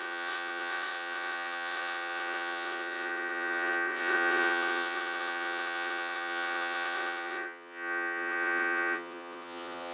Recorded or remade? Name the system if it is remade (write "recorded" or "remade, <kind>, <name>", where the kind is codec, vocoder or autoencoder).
remade, vocoder, WaveNeXt